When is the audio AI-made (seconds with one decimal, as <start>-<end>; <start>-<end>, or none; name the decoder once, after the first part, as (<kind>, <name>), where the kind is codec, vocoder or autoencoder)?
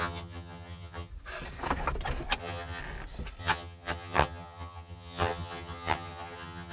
0.0-1.1 (vocoder, HiFi-GAN); 2.4-2.8; 3.4-6.7